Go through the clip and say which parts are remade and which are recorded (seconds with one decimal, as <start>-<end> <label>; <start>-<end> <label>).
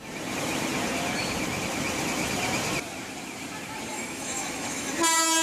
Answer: 0.0-3.9 recorded; 3.9-4.9 remade; 4.9-5.4 recorded